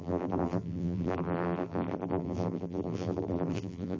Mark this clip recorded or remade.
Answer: remade